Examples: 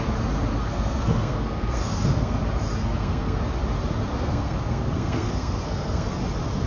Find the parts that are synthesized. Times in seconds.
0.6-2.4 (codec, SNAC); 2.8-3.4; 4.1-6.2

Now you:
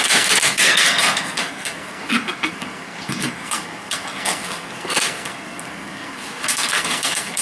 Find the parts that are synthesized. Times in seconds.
0.0-7.4 (codec, SNAC)